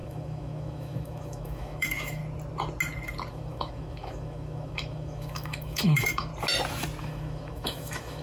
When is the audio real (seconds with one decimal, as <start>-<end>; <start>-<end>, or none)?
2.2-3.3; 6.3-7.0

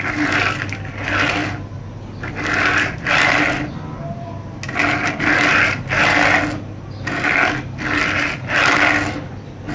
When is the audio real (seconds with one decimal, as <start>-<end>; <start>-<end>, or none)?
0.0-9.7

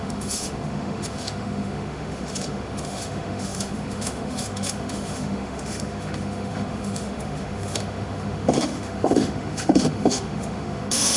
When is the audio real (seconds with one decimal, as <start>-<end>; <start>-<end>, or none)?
none